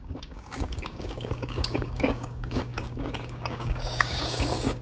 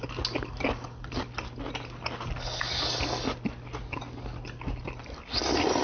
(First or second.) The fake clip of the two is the first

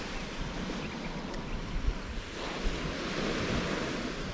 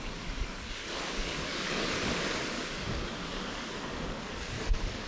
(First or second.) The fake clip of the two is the second